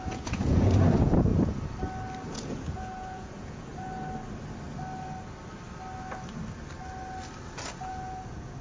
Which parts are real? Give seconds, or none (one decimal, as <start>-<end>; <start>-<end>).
1.3-2.3; 3.7-7.9